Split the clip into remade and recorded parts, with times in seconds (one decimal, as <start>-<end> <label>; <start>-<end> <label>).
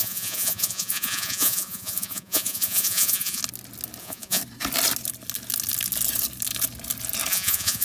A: 0.0-3.4 remade; 3.4-4.0 recorded; 4.0-4.4 remade; 4.4-7.3 recorded; 7.3-7.8 remade